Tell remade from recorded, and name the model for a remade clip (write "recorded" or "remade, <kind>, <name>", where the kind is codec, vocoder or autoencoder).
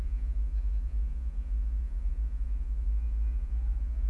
remade, vocoder, Vocos